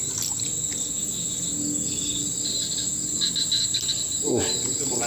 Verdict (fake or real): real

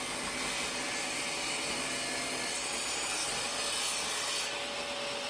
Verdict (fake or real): real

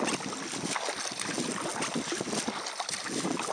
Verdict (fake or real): real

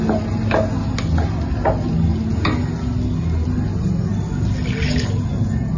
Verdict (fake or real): real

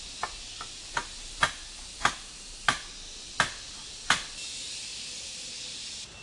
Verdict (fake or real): real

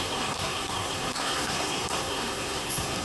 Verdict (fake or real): fake